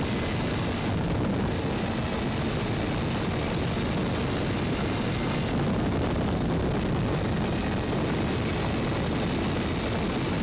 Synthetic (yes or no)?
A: no